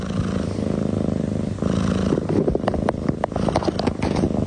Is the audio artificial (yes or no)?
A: no